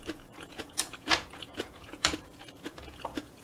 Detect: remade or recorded remade